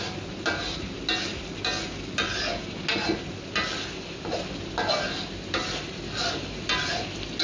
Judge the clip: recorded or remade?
recorded